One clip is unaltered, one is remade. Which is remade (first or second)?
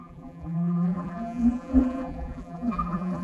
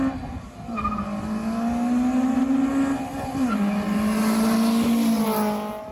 first